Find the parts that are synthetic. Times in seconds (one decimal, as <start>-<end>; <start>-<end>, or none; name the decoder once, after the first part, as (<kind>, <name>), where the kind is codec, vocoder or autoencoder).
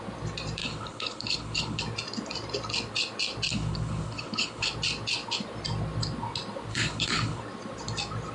0.6-1.8 (codec, HILCodec); 3.5-4.7; 6.7-7.4